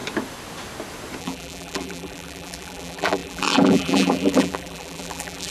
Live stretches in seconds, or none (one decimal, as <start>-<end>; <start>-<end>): 0.0-1.2